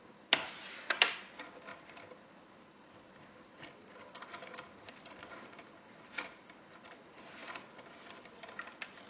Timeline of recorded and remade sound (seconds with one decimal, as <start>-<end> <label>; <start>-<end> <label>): 0.0-9.1 recorded